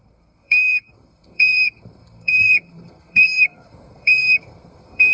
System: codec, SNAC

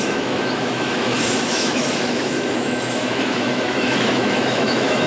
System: autoencoder, DAC-VAE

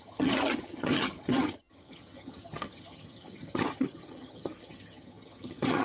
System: vocoder, HiFi-GAN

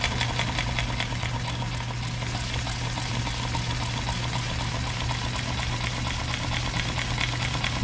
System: none